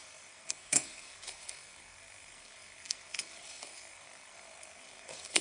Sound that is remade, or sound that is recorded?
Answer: remade